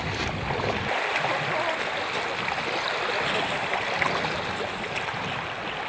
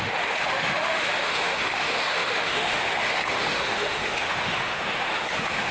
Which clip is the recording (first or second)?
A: first